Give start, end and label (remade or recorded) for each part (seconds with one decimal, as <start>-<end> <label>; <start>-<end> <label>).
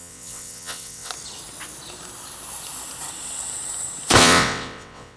0.0-1.1 remade; 1.1-4.2 recorded; 4.2-5.2 remade